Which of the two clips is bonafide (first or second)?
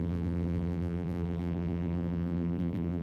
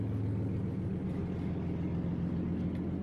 second